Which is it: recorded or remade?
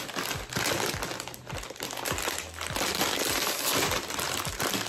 recorded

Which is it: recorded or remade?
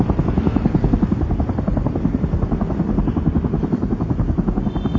recorded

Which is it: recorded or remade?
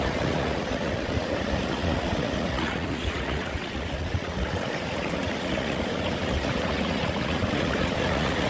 remade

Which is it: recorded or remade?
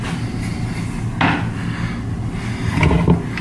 recorded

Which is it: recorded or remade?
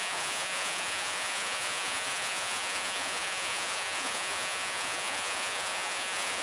remade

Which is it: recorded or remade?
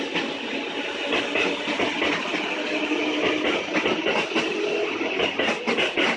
recorded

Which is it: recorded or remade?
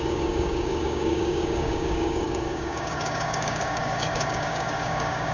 remade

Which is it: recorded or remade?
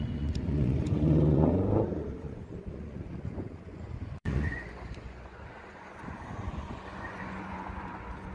remade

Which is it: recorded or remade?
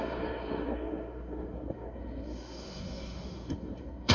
remade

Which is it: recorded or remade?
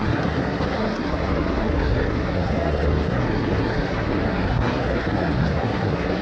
remade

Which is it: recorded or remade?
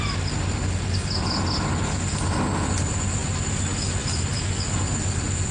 recorded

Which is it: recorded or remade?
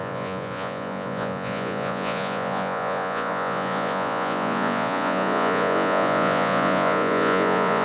remade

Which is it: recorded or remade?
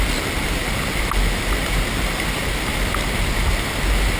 recorded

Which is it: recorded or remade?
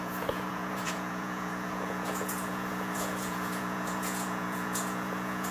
remade